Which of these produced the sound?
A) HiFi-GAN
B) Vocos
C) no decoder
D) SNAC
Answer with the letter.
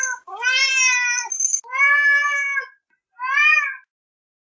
C